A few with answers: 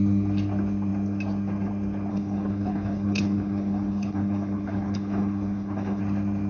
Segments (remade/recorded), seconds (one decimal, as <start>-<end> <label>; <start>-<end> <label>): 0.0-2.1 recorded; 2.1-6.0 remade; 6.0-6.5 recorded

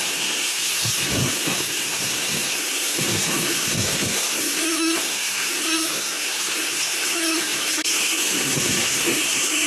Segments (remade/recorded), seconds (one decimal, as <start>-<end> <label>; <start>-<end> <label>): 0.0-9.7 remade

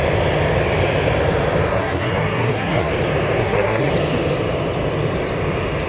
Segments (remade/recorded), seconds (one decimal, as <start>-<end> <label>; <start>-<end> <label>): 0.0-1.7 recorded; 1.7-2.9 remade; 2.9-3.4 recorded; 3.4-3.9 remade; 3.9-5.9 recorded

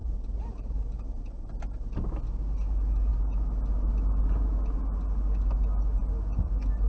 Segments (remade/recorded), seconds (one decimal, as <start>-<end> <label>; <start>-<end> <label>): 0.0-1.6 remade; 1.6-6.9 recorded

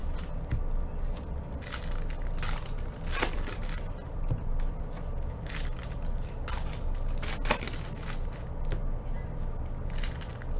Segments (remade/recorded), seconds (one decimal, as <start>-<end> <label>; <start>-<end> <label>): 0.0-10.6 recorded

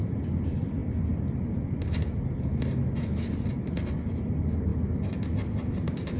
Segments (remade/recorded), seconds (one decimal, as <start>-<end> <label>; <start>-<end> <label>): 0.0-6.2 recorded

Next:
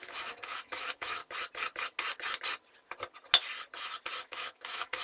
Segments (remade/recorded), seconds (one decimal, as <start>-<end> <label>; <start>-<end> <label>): 0.0-1.2 remade; 1.2-4.2 recorded; 4.2-5.0 remade